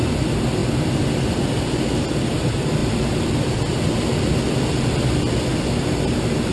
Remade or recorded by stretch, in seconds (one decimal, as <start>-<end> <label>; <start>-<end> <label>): 0.0-0.6 recorded; 0.6-1.4 remade; 1.4-2.8 recorded; 2.8-3.8 remade; 3.8-6.5 recorded